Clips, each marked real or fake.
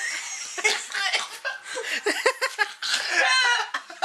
real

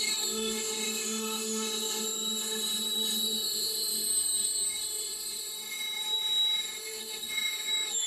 fake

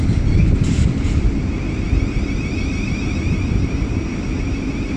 real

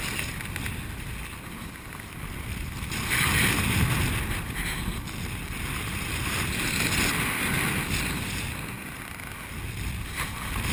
real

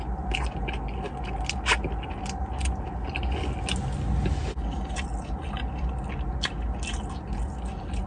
real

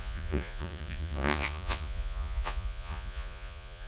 fake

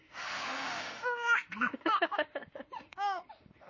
fake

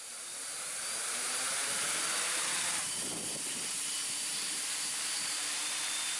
fake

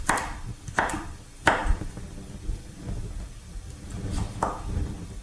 real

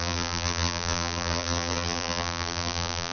fake